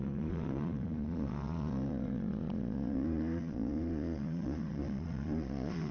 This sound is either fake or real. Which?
fake